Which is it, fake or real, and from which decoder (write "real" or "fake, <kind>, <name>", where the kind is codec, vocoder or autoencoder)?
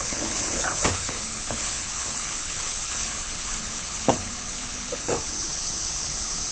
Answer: fake, codec, HILCodec